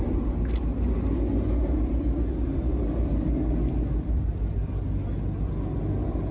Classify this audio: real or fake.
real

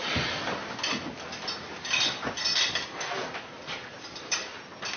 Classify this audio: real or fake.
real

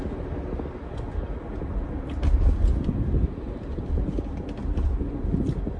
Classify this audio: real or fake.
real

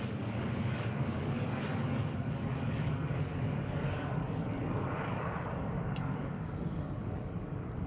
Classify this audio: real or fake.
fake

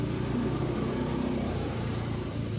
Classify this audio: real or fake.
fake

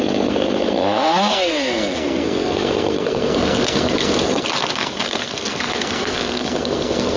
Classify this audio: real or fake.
fake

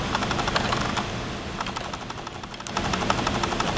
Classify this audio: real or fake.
real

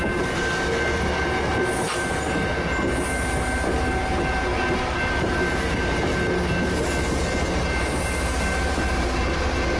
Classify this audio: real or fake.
real